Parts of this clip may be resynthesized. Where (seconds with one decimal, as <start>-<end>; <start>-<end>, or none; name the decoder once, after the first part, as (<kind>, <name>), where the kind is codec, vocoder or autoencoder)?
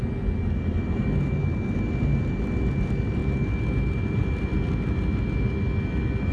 none